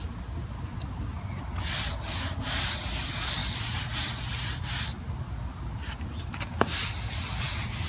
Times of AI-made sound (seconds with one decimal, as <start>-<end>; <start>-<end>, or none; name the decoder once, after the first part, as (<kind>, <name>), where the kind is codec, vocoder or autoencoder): none